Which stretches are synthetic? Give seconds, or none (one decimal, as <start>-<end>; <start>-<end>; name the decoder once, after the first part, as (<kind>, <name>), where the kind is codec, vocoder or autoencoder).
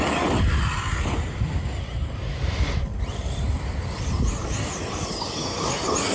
none